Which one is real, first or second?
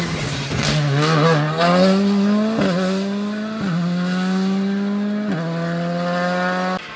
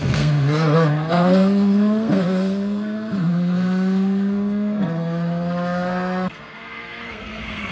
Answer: first